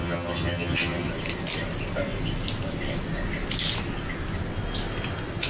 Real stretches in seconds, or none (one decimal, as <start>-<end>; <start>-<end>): 1.1-5.5